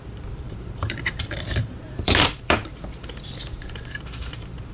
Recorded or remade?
remade